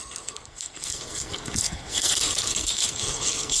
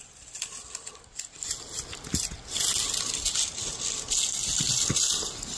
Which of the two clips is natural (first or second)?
second